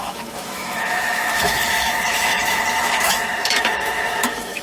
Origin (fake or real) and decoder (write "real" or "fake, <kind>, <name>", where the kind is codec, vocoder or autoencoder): fake, autoencoder, DAC-VAE